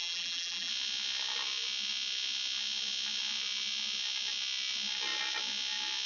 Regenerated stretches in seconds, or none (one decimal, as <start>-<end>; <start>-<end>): 0.0-0.7